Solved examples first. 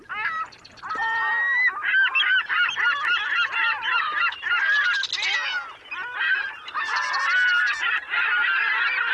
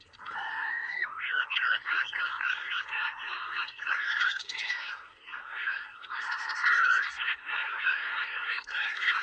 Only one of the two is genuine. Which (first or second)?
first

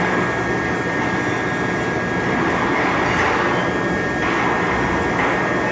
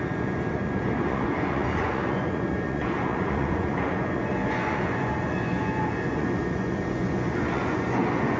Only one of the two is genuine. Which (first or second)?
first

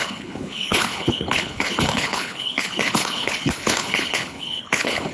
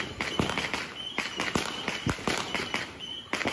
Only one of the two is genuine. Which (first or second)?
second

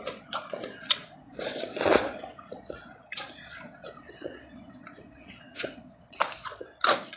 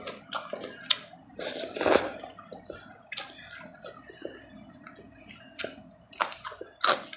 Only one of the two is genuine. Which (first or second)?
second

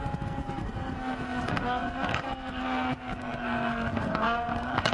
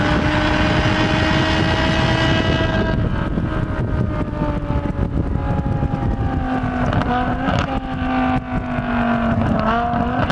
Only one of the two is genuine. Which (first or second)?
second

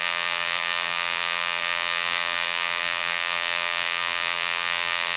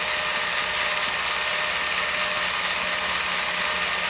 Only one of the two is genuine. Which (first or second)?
second